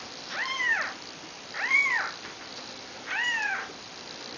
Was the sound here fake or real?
real